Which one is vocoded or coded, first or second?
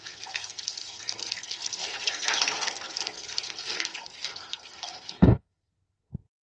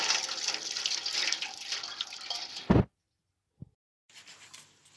first